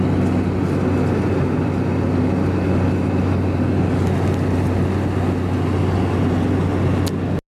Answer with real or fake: real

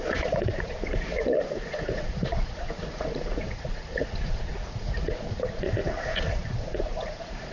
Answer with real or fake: fake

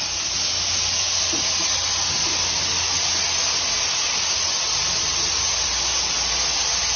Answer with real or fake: real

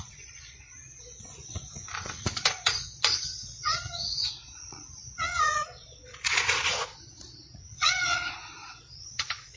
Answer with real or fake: fake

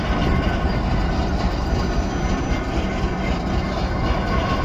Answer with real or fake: real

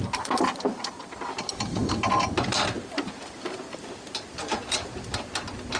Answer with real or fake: real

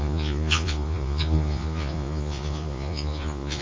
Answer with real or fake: fake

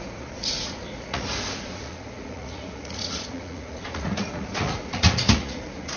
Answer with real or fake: fake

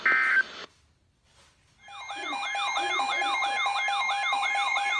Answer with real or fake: real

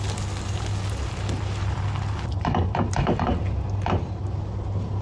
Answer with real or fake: real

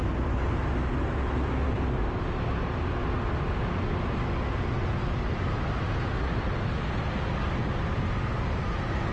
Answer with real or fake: real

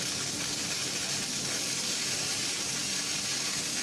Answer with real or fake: real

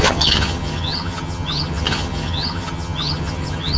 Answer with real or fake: fake